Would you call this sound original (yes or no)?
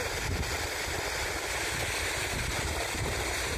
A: yes